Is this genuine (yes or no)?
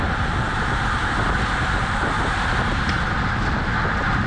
yes